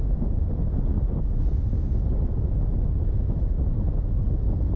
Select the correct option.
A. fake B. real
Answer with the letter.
B